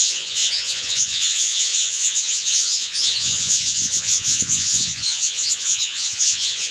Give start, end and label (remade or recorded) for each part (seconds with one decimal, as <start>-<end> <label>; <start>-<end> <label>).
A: 0.0-6.7 remade